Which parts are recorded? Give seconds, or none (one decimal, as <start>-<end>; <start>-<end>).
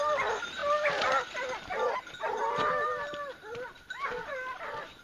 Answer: 0.0-5.0